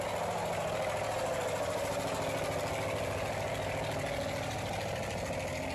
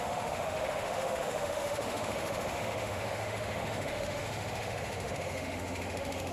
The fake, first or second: second